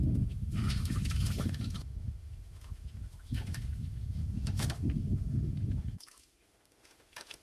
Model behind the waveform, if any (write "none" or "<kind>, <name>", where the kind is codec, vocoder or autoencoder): autoencoder, DAC-VAE